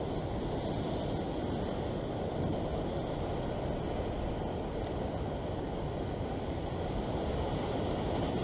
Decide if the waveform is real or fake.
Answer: real